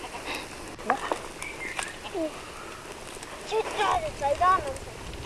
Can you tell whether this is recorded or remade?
recorded